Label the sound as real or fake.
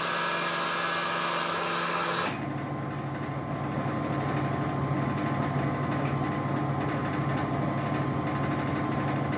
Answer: real